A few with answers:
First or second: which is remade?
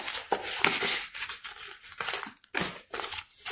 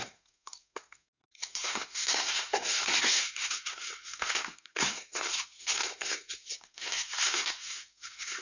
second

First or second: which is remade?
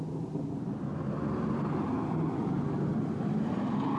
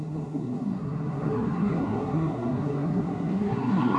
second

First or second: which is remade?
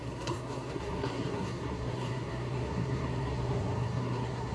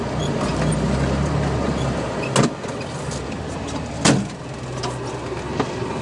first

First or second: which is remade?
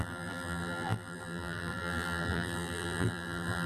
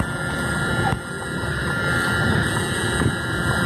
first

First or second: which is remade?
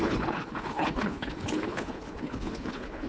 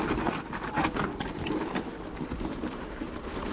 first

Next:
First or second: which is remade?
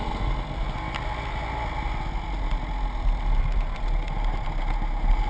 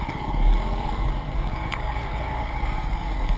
second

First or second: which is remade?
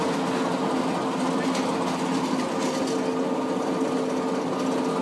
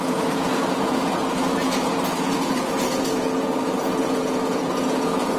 second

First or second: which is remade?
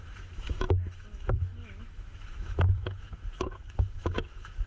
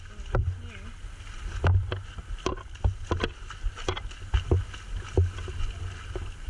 first